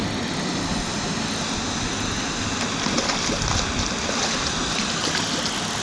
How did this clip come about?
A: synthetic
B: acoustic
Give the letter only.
B